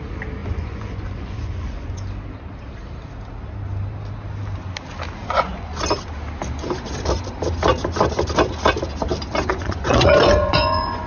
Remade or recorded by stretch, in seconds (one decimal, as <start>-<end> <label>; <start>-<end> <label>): 0.0-0.4 recorded; 0.4-2.0 remade; 2.0-5.2 recorded; 5.2-5.7 remade; 5.7-9.5 recorded; 9.5-11.1 remade